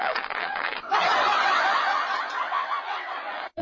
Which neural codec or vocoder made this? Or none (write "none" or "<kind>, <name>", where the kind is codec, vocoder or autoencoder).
vocoder, WaveNeXt